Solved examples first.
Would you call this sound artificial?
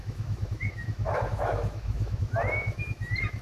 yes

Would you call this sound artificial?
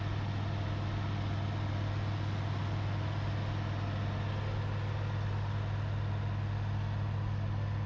no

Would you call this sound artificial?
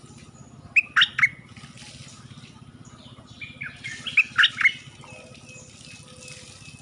no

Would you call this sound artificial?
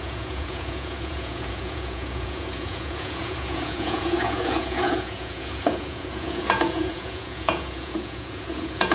yes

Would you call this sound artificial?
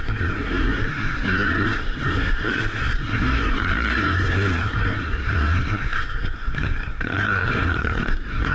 yes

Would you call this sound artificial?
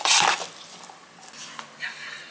no